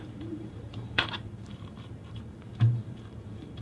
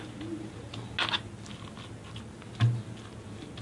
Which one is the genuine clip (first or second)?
second